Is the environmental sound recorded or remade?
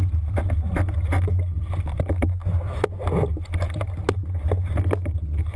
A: recorded